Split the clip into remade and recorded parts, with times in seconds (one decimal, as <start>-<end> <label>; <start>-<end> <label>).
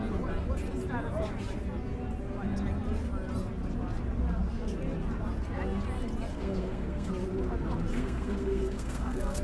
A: 0.0-6.3 recorded; 6.3-7.1 remade; 7.1-7.9 recorded; 7.9-9.4 remade